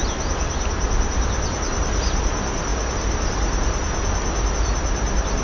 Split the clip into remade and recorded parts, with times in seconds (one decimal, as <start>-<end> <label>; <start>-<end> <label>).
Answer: 0.0-5.4 recorded